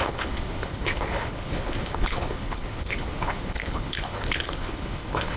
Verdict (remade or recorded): remade